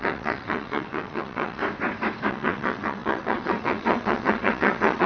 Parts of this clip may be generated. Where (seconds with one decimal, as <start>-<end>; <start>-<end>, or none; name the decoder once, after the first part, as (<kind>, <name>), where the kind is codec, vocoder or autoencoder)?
0.0-1.6 (vocoder, WaveNeXt); 2.3-5.1